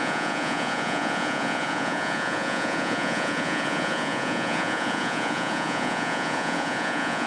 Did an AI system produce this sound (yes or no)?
yes